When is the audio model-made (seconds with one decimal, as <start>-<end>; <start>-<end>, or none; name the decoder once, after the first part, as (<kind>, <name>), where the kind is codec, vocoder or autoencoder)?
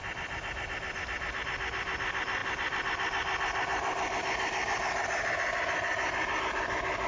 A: none